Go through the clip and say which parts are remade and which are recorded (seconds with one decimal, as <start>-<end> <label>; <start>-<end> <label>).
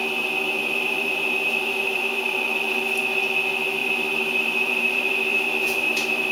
0.0-2.8 remade; 2.8-3.8 recorded; 3.8-6.3 remade